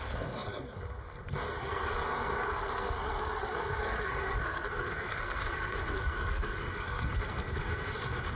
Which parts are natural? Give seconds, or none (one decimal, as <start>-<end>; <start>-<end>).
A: none